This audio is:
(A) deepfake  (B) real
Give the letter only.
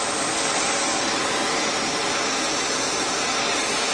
B